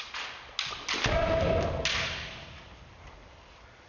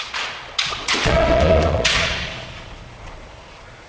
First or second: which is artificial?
second